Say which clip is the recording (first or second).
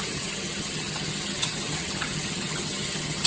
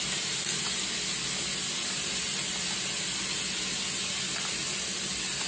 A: second